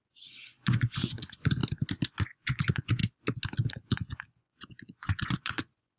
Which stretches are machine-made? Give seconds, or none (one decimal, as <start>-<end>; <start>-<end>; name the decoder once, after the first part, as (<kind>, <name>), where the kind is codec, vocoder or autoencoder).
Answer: 0.0-1.6 (vocoder, Vocos); 2.2-3.0; 3.7-6.0